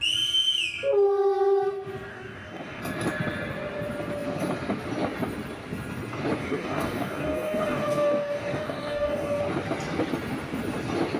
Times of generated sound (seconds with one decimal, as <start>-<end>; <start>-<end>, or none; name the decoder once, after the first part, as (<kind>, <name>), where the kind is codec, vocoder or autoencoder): 2.1-2.8 (codec, DAC); 6.4-9.4